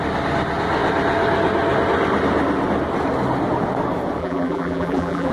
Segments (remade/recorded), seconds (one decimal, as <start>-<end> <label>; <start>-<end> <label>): 0.0-4.2 recorded; 4.2-5.3 remade